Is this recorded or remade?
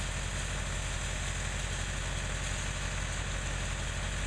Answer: recorded